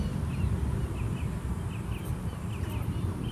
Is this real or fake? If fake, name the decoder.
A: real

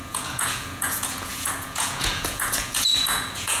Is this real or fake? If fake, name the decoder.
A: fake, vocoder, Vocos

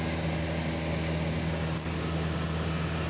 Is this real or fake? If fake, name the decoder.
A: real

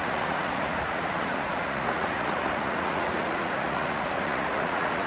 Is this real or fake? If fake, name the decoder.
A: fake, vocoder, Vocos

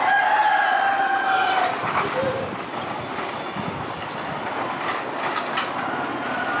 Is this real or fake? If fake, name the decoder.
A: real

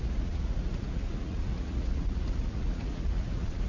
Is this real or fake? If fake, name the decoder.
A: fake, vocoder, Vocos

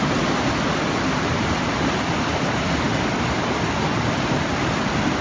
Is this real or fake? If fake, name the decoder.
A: real